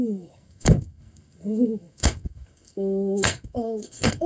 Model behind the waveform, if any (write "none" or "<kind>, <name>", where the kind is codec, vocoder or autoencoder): codec, SNAC